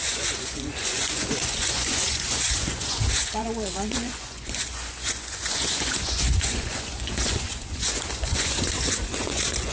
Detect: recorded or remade remade